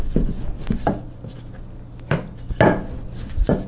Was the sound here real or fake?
real